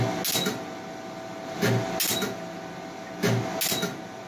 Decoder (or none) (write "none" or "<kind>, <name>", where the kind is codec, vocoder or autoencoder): none